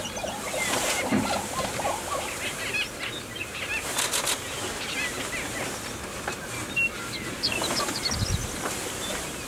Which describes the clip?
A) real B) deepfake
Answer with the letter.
A